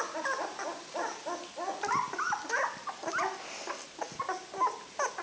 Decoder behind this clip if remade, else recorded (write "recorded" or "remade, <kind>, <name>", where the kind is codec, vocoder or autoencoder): recorded